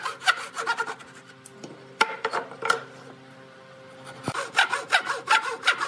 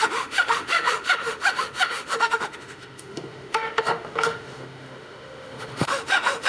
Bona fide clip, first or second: first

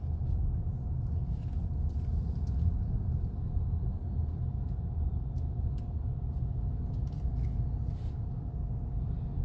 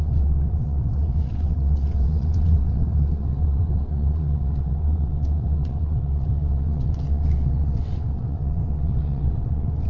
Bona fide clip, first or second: first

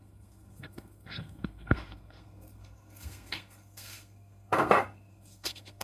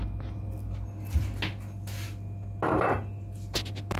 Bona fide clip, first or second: second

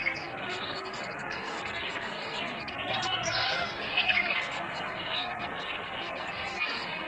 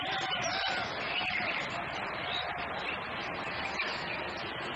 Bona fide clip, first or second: second